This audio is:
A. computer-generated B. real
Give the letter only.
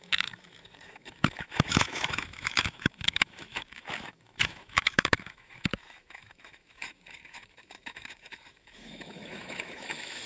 A